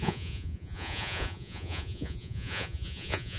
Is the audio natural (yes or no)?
no